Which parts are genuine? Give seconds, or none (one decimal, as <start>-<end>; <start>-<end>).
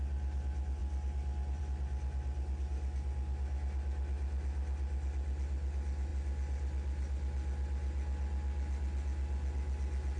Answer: 0.0-10.2